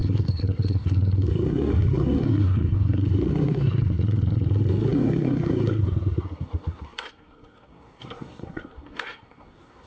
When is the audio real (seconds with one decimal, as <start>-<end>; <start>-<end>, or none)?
none